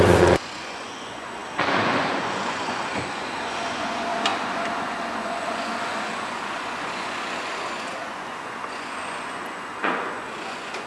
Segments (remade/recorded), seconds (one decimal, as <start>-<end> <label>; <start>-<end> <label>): 0.0-10.9 remade

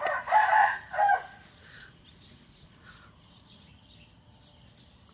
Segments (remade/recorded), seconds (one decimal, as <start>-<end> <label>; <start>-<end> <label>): 0.0-0.6 recorded; 0.6-3.7 remade; 3.7-5.1 recorded